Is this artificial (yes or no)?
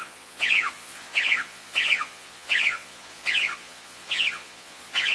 yes